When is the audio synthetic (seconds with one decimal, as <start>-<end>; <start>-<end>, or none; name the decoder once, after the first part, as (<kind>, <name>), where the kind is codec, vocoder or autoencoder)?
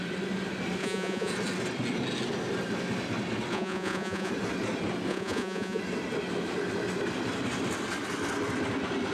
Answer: 0.8-1.3 (vocoder, Vocos); 3.5-4.3; 5.1-5.8